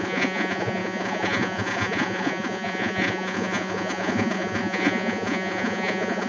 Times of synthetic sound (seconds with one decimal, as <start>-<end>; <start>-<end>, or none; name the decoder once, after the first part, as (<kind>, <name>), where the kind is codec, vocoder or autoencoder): 0.0-6.3 (vocoder, Vocos)